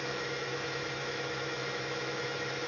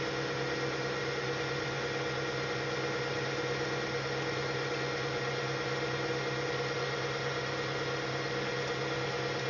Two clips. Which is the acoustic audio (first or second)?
second